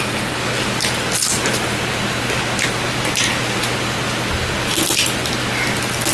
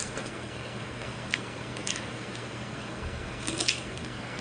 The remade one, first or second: second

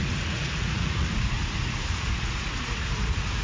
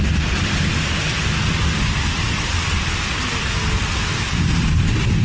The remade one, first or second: first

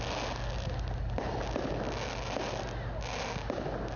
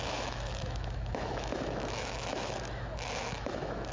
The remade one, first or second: second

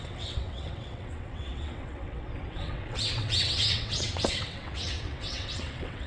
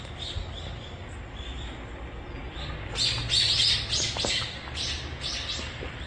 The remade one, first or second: first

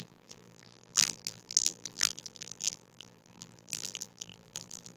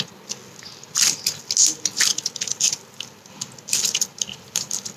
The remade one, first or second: first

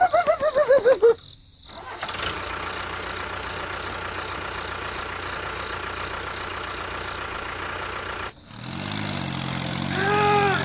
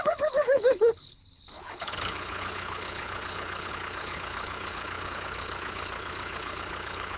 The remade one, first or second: second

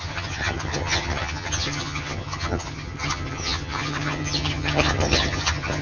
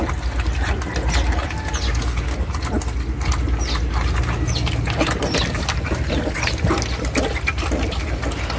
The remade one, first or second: first